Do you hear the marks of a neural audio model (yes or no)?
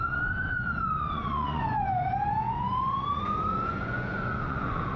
yes